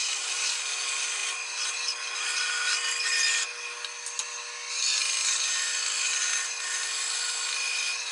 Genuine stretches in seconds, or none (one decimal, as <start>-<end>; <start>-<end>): 0.6-8.1